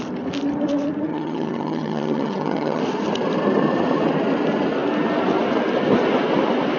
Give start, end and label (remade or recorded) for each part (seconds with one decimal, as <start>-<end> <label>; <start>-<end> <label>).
0.0-1.1 recorded; 1.1-2.8 remade; 2.8-6.8 recorded